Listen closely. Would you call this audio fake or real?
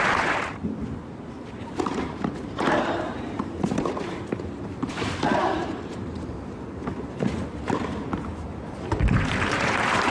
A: fake